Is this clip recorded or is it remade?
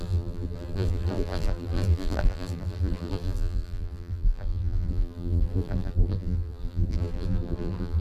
remade